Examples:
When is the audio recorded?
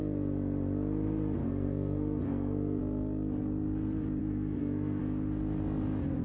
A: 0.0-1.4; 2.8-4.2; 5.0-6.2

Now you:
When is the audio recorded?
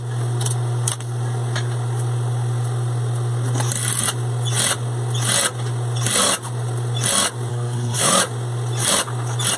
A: 0.0-7.5; 8.1-9.6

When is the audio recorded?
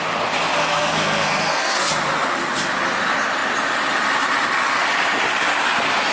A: 0.0-0.6; 1.9-6.1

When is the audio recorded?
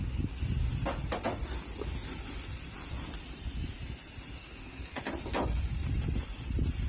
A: 0.0-4.4; 5.0-6.9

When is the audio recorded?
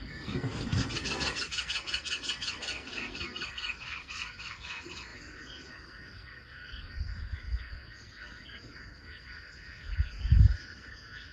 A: none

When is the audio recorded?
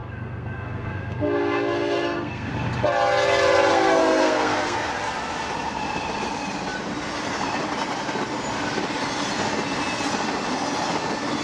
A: 2.5-3.7; 4.9-11.4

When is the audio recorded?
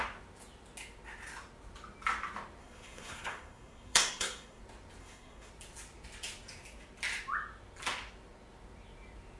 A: 0.0-2.6; 4.6-5.0; 5.5-9.4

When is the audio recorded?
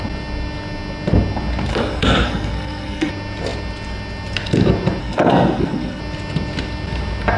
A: 0.0-1.7; 3.1-5.0; 6.0-7.4